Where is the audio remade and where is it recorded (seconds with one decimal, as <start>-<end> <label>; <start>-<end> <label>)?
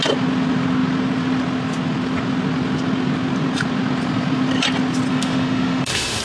0.0-5.1 recorded; 5.1-6.2 remade